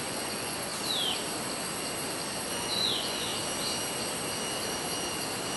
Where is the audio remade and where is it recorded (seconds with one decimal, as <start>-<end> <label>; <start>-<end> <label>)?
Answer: 0.0-0.7 remade; 0.7-2.5 recorded; 2.5-3.3 remade; 3.3-5.6 recorded